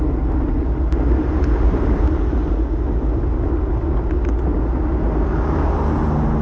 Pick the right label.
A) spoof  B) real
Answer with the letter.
B